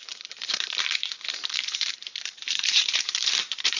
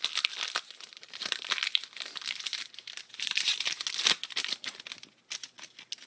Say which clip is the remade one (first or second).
first